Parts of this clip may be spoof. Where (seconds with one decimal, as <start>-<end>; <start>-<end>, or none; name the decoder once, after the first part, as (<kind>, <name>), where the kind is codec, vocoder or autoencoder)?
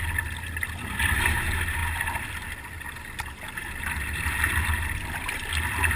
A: none